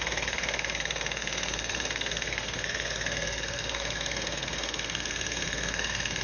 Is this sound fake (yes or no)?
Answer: yes